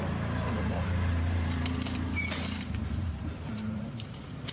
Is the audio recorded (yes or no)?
no